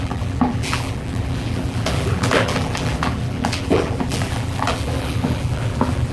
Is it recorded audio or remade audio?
remade